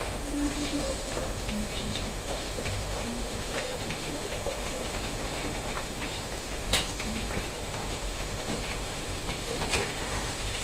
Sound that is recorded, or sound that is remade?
remade